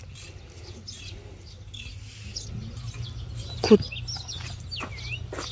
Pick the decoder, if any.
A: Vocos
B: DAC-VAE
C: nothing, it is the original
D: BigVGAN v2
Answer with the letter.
C